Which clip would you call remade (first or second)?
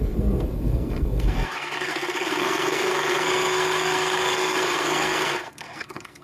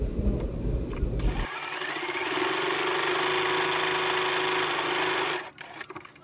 first